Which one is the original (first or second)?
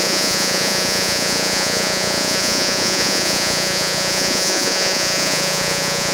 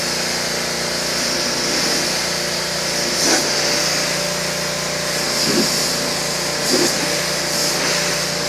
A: second